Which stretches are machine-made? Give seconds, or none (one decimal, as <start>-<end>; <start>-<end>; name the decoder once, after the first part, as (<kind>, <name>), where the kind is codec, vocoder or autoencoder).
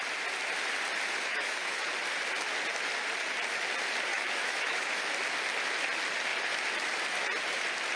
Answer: 1.3-1.9 (autoencoder, DAC-VAE); 4.1-5.0